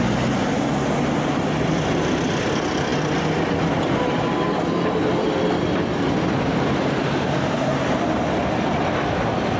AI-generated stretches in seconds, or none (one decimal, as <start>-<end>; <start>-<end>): none